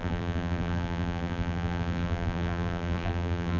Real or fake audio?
fake